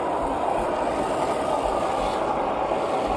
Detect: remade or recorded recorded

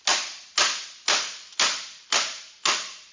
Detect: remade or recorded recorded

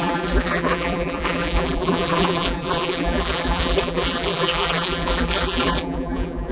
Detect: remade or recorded remade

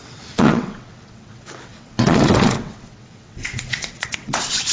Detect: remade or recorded remade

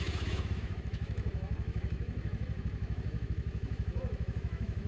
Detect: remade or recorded remade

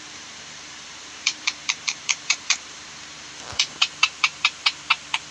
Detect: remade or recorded remade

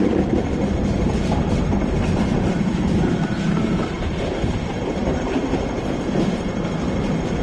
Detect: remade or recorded remade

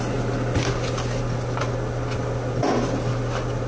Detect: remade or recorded recorded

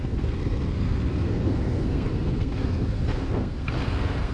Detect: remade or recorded remade